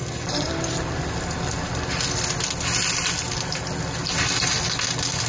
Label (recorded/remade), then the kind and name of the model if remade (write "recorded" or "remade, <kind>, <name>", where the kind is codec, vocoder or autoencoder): recorded